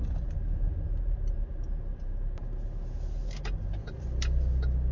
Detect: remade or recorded recorded